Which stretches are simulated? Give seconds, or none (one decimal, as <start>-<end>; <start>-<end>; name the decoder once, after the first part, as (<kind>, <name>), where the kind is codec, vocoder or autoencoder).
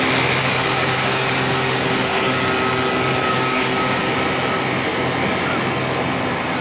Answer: 0.4-2.4 (codec, DAC); 3.1-4.1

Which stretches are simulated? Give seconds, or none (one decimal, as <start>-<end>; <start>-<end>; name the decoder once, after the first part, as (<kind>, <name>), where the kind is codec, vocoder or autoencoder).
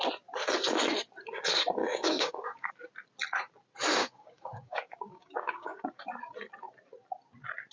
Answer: 1.8-2.7 (codec, DAC); 4.0-6.0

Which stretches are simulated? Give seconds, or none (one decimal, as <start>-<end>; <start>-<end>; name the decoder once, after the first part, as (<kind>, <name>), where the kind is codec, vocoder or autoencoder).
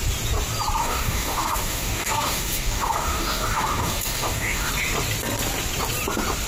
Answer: 0.8-4.7 (codec, DAC)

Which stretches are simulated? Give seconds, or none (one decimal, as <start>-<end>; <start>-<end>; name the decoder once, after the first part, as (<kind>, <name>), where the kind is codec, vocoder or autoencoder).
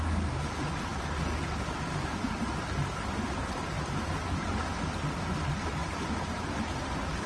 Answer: none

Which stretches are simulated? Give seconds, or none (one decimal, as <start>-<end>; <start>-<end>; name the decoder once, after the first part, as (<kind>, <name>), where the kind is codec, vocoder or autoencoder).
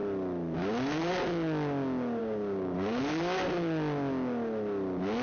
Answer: 2.2-3.0 (codec, DAC)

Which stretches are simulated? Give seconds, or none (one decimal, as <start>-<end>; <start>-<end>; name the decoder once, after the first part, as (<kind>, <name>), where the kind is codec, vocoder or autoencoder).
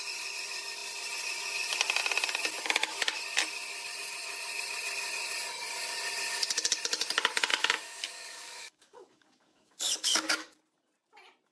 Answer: 7.5-10.6 (codec, DAC)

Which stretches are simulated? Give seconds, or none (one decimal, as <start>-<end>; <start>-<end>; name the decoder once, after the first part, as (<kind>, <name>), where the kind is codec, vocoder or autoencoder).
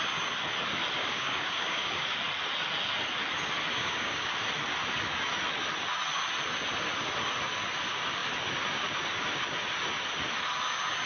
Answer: 1.0-2.0 (codec, DAC); 3.7-4.3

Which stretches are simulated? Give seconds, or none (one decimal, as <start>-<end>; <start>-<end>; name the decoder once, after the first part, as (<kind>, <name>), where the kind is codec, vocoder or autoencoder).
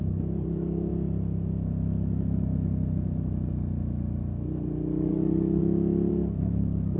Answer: 0.0-0.9 (codec, DAC); 5.1-5.6; 6.1-7.0